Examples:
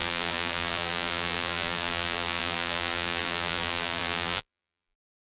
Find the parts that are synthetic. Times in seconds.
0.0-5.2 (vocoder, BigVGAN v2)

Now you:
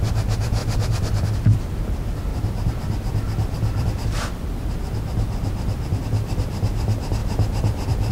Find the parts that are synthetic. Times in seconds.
0.6-1.6 (vocoder, BigVGAN v2); 2.3-6.0; 7.2-8.1

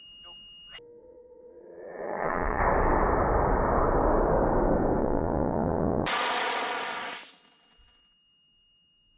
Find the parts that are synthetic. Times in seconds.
1.0-2.6 (vocoder, Vocos); 5.0-6.8

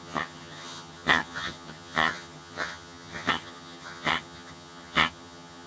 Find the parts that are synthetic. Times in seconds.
0.0-5.7 (vocoder, HiFi-GAN)